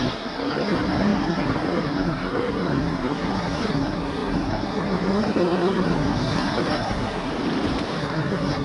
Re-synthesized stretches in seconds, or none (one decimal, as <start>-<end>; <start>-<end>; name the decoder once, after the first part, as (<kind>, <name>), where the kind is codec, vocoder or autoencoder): 0.0-7.3 (codec, SNAC); 8.0-8.6